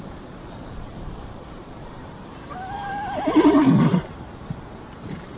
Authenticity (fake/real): fake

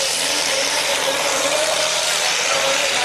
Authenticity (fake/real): fake